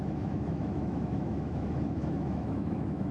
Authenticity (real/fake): fake